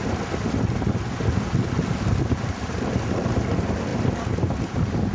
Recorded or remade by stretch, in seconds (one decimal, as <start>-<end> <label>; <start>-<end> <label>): 0.0-5.1 recorded